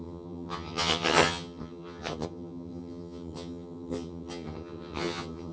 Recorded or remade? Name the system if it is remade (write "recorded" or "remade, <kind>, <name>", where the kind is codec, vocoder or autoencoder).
remade, vocoder, HiFi-GAN